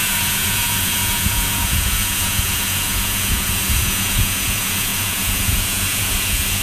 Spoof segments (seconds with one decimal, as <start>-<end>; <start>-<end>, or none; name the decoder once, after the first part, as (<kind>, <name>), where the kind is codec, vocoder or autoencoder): 0.0-6.6 (vocoder, Vocos)